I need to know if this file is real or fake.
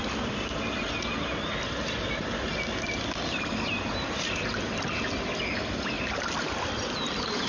real